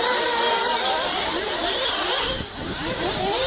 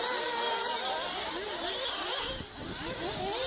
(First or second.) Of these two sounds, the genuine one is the second